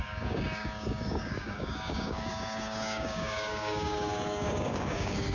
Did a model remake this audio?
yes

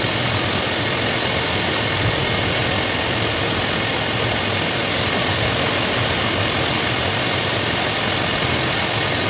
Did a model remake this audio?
no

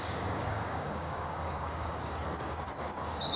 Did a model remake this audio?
yes